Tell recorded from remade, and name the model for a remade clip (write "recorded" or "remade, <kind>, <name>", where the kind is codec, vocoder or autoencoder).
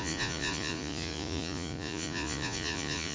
remade, vocoder, Vocos